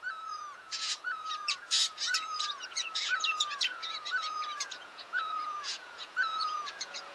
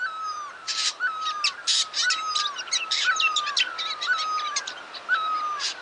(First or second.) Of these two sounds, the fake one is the first